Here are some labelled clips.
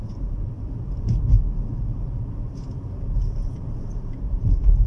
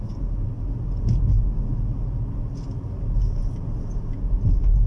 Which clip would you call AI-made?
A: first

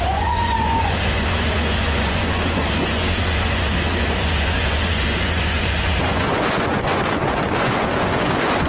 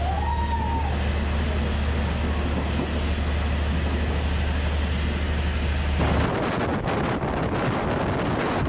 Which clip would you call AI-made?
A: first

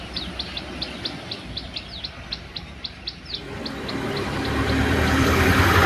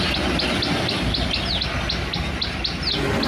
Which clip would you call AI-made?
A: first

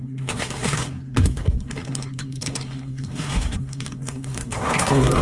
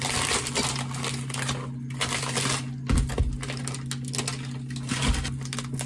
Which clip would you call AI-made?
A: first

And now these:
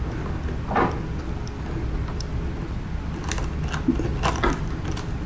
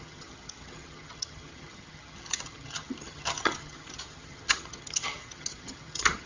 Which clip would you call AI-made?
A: second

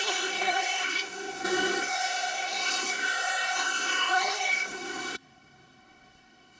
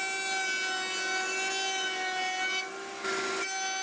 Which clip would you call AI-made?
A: first